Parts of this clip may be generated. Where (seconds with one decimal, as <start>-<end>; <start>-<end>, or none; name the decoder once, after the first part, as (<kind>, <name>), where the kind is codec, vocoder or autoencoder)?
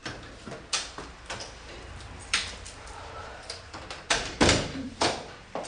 0.7-5.7 (vocoder, BigVGAN v2)